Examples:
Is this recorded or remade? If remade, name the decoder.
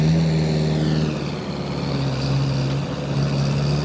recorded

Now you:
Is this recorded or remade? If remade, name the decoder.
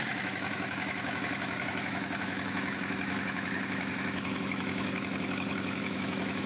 remade, autoencoder, DAC-VAE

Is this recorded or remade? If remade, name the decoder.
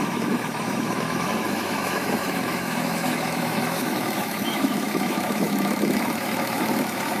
remade, autoencoder, DAC-VAE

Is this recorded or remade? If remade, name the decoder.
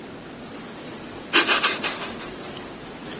recorded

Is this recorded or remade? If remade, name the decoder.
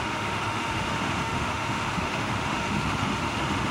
remade, autoencoder, DAC-VAE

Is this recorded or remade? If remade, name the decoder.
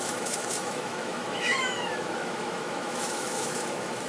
remade, autoencoder, DAC-VAE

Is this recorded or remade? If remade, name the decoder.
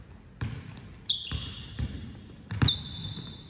recorded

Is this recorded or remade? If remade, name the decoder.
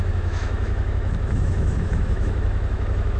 remade, autoencoder, DAC-VAE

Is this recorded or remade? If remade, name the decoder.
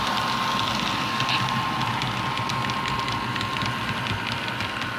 recorded